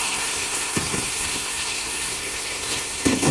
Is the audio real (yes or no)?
no